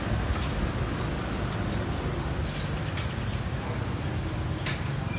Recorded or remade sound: recorded